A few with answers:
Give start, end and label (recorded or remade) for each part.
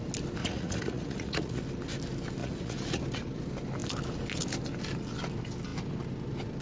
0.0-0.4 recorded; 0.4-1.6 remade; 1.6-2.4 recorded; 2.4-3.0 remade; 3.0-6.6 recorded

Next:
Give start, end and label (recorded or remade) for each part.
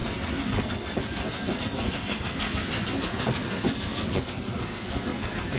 0.0-5.6 remade